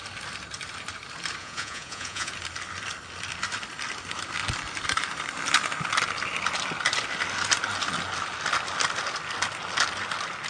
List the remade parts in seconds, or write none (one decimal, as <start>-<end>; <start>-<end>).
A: 1.4-2.3